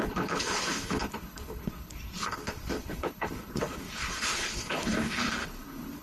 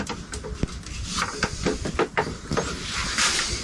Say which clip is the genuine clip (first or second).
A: second